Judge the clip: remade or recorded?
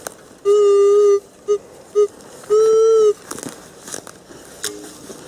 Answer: recorded